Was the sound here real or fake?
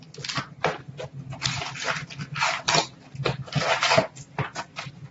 real